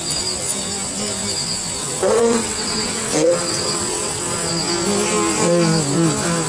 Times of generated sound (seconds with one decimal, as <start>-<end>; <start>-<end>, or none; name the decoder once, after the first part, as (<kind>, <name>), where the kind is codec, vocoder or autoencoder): 1.8-4.5 (vocoder, WaveNeXt)